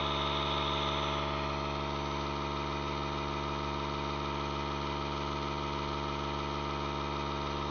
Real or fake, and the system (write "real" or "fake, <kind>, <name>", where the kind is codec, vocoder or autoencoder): real